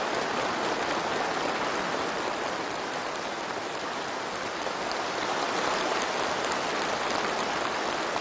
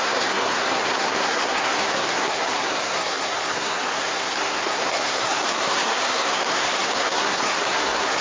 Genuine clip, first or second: first